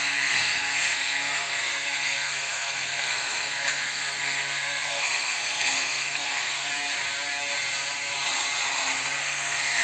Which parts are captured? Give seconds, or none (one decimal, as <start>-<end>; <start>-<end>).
6.7-9.2